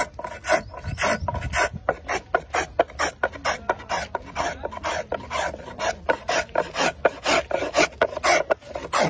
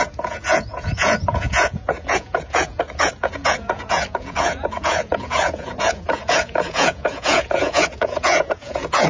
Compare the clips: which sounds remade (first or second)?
second